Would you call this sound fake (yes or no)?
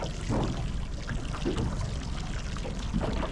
no